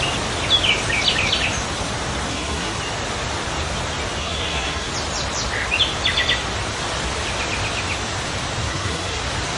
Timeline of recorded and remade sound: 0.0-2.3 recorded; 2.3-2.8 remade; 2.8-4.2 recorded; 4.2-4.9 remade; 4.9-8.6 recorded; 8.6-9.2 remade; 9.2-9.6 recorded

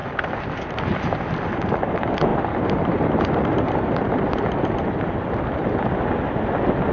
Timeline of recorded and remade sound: 0.0-6.9 recorded

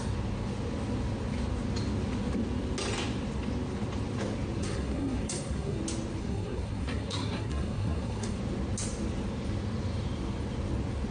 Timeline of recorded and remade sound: 0.0-4.6 recorded; 4.6-5.8 remade; 5.8-6.2 recorded; 6.2-8.4 remade; 8.4-11.1 recorded

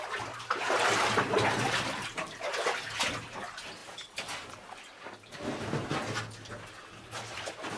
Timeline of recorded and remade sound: 0.0-7.8 recorded

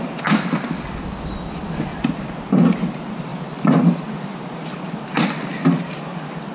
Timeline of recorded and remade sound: 0.0-1.9 recorded; 1.9-2.5 remade; 2.5-6.5 recorded

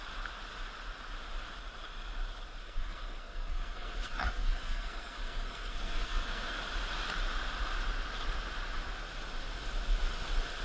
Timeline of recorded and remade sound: 0.0-2.6 recorded; 2.6-6.6 remade; 6.6-10.6 recorded